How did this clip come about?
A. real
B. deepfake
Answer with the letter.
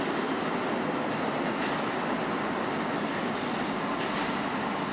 A